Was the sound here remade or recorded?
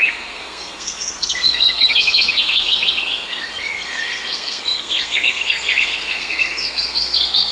remade